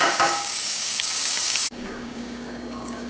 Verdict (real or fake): fake